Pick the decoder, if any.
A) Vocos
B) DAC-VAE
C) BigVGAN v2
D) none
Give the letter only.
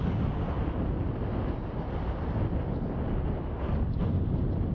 D